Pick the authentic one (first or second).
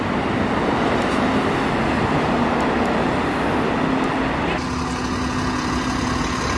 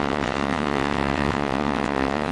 first